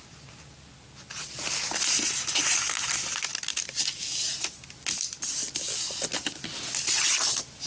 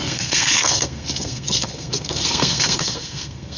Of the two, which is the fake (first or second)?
second